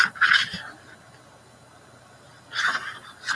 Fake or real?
real